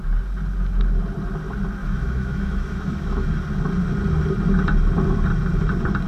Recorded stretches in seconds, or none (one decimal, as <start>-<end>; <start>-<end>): 0.0-1.8; 3.3-6.1